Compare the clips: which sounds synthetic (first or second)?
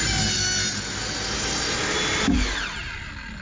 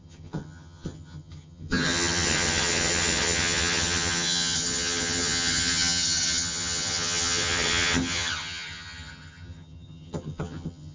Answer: second